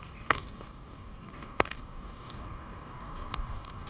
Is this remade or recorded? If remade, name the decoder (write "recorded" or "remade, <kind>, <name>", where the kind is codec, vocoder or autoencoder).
remade, codec, DAC